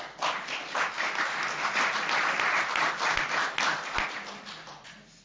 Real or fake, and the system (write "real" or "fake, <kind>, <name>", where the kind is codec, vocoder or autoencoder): real